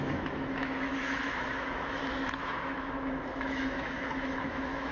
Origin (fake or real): fake